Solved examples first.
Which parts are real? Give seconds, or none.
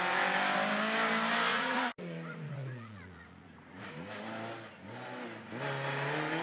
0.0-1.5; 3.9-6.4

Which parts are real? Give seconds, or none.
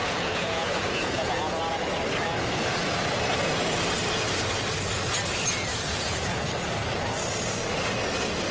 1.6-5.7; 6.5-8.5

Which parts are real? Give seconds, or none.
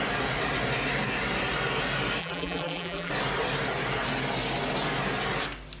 0.0-2.2; 3.1-5.8